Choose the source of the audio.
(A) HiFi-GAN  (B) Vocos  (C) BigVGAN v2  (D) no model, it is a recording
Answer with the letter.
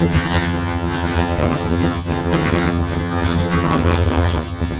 A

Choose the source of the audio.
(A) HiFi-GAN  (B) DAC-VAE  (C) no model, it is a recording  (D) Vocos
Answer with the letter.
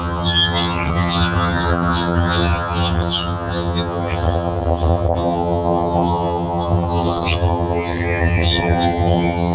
A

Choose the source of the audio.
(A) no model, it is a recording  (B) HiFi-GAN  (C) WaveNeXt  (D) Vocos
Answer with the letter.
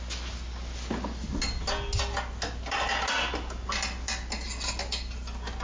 A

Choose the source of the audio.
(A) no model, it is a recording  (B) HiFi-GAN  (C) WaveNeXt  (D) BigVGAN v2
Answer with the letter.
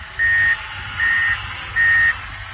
A